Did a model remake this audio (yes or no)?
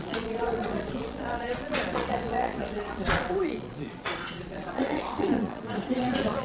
yes